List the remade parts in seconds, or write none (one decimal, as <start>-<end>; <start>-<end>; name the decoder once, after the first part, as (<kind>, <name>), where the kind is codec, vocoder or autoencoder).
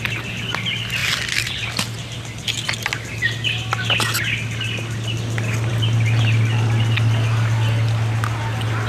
none